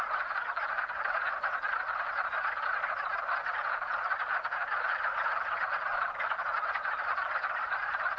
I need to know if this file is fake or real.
real